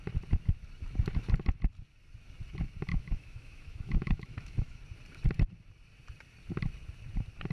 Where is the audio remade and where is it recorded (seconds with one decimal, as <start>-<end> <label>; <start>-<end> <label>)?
0.0-2.9 recorded; 2.9-4.8 remade; 4.8-7.5 recorded

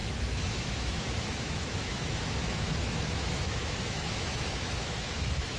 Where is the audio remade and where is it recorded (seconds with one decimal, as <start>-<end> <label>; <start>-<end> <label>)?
0.0-5.6 remade

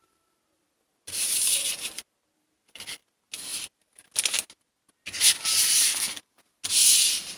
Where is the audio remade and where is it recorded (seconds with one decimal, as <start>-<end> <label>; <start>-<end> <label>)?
0.0-7.4 recorded

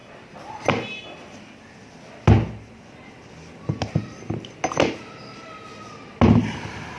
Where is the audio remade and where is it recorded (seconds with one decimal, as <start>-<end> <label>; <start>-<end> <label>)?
0.0-7.0 recorded

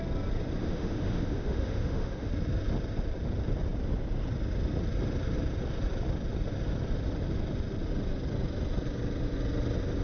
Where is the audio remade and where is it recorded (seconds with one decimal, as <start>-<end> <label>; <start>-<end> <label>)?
0.0-0.6 recorded; 0.6-2.3 remade; 2.3-10.0 recorded

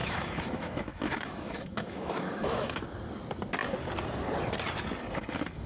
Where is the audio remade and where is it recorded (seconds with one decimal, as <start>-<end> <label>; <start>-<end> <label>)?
0.0-2.8 remade; 2.8-5.7 recorded

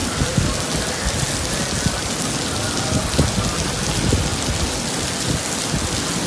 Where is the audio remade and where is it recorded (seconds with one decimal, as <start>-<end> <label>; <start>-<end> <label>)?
0.0-6.3 recorded

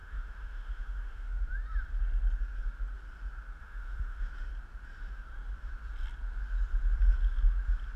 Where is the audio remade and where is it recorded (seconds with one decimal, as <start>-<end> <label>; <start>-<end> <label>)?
0.0-1.4 remade; 1.4-3.6 recorded; 3.6-4.3 remade; 4.3-8.0 recorded